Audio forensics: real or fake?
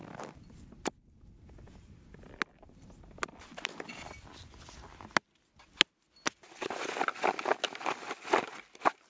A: real